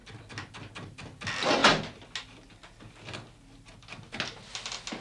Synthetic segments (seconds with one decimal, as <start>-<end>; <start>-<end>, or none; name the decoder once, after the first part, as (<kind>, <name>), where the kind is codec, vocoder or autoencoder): none